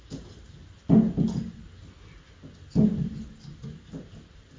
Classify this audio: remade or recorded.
recorded